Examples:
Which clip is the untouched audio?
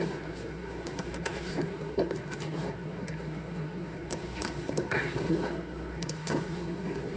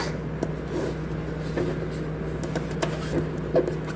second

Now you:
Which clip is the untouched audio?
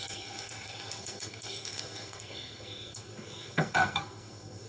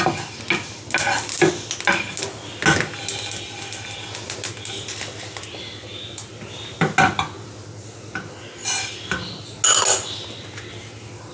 second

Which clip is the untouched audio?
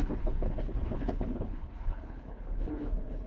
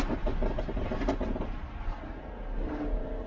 second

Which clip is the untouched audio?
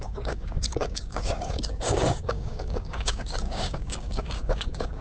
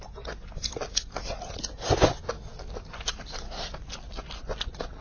second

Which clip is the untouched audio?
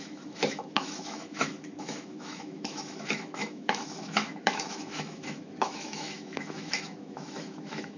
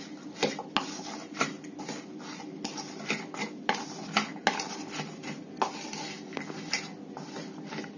second